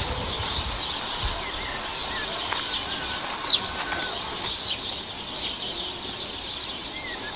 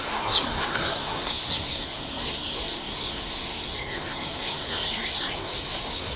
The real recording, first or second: first